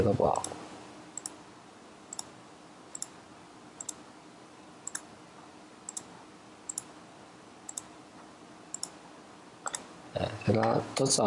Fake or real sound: real